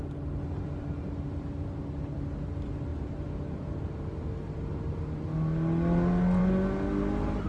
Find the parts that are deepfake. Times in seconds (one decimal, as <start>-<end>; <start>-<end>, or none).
none